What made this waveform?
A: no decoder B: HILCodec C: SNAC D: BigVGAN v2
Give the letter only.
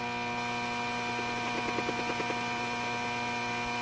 A